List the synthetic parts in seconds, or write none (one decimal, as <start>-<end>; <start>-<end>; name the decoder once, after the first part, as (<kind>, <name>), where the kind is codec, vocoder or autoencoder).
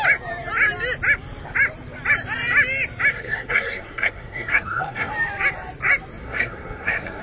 3.1-5.1 (codec, SNAC); 6.2-7.2